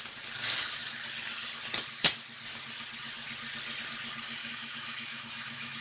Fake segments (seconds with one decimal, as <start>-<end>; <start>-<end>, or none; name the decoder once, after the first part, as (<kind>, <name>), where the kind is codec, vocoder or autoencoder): 4.4-5.8 (autoencoder, DAC-VAE)

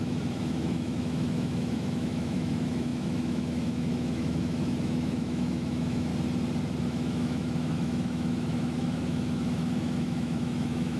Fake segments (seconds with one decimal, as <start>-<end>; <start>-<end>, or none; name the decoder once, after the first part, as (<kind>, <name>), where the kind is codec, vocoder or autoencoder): 0.0-6.1 (autoencoder, DAC-VAE); 6.8-11.0